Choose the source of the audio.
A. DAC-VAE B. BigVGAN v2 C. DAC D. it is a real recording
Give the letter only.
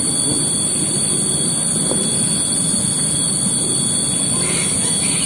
D